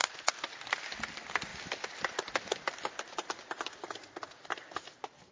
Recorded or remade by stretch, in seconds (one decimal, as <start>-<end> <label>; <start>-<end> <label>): 0.0-5.3 recorded